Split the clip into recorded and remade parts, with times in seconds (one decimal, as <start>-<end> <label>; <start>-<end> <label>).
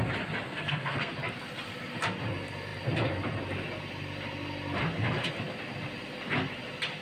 0.0-0.5 recorded; 0.5-1.1 remade; 1.1-7.0 recorded